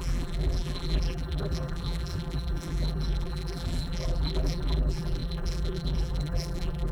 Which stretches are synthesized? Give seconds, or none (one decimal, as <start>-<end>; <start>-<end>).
0.0-6.9